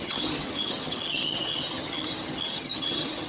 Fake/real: fake